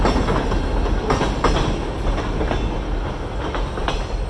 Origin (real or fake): real